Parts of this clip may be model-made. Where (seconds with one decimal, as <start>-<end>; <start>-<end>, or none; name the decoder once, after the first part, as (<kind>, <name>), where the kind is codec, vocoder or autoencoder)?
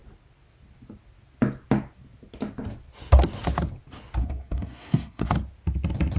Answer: 4.2-5.3 (codec, SNAC)